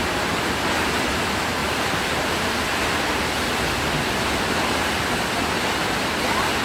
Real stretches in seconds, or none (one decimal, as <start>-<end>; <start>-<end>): 0.0-6.6